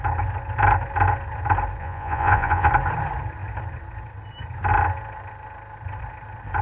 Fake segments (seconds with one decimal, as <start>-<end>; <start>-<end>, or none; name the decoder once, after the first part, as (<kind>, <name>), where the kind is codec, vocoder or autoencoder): 1.8-2.7 (vocoder, Vocos)